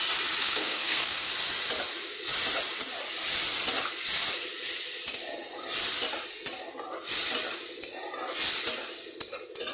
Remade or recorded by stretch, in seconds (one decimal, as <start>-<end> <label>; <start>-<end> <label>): 0.0-0.4 recorded; 0.4-1.3 remade; 1.3-9.7 recorded